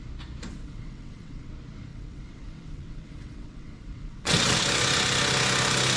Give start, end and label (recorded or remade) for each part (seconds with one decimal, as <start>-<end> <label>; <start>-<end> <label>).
0.0-0.5 recorded; 0.5-1.5 remade; 1.5-1.9 recorded; 1.9-4.6 remade; 4.6-6.0 recorded